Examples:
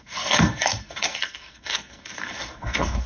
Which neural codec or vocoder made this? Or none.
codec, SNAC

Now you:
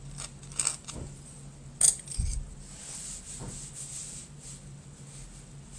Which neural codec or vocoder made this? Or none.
none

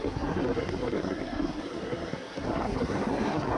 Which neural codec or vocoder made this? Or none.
codec, SNAC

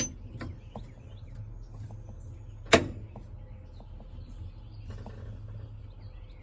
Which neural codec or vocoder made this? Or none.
none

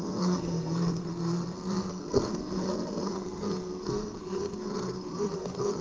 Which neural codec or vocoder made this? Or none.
codec, SNAC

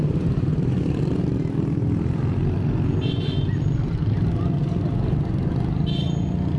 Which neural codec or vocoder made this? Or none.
none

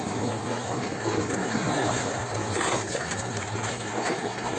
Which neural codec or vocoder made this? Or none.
codec, SNAC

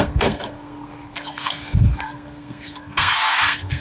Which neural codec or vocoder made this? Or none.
codec, SNAC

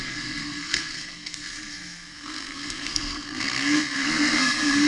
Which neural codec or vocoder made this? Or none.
codec, SNAC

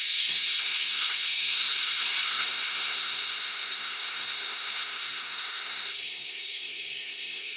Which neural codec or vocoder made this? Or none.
codec, SNAC